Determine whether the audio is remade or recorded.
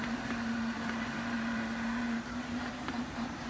remade